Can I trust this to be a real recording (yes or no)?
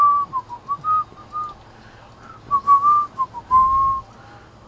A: yes